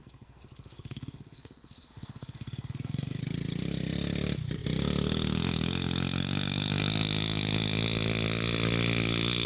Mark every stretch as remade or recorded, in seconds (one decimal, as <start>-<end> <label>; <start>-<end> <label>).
0.0-3.2 remade; 3.2-9.5 recorded